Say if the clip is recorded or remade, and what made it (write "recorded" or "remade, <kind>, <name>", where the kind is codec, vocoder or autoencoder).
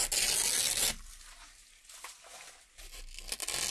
recorded